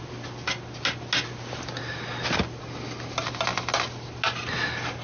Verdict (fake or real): real